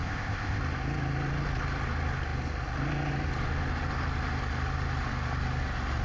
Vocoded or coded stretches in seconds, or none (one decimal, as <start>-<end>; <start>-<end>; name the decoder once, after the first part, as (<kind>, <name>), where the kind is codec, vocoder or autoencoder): 0.0-0.6 (codec, ZipCodec)